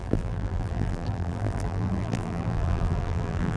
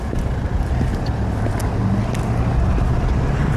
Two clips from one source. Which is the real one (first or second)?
second